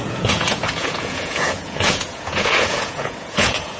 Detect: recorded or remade remade